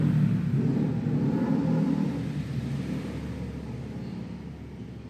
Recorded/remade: recorded